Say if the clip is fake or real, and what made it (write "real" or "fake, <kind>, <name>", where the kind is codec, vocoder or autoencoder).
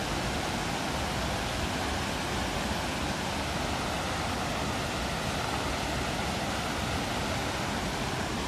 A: real